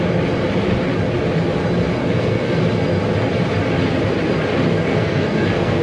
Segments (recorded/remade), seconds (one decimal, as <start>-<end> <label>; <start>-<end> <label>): 0.0-2.0 recorded; 2.0-2.6 remade; 2.6-4.9 recorded; 4.9-5.8 remade